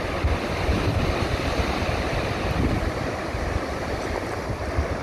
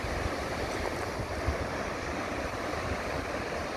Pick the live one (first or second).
second